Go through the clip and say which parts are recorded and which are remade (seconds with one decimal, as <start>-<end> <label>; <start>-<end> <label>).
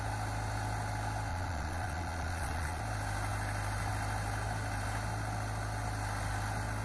0.0-1.3 recorded; 1.3-2.8 remade; 2.8-6.8 recorded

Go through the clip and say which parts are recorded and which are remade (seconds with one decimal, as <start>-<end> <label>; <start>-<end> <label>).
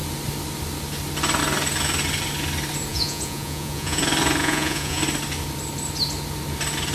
0.0-2.9 recorded; 2.9-4.0 remade; 4.0-4.4 recorded; 4.4-5.0 remade; 5.0-6.9 recorded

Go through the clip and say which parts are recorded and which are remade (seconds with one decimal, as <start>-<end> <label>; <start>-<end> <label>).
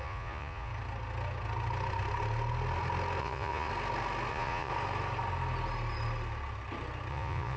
0.0-0.7 remade; 0.7-3.2 recorded; 3.2-3.7 remade; 3.7-4.3 recorded; 4.3-4.7 remade; 4.7-7.1 recorded; 7.1-7.6 remade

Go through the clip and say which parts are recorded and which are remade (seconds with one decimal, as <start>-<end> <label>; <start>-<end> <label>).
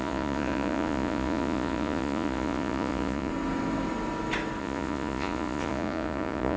0.0-3.3 remade; 3.3-4.6 recorded; 4.6-6.6 remade